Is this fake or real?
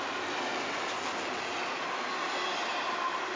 real